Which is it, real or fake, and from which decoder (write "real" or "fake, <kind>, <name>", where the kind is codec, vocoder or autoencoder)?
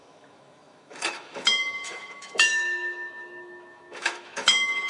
fake, autoencoder, DAC-VAE